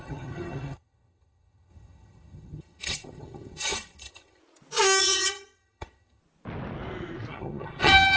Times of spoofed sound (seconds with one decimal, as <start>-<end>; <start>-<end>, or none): 0.0-4.4; 5.0-6.2; 7.3-8.2